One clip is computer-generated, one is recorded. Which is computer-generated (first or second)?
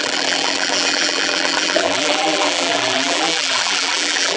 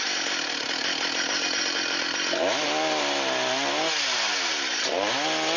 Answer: first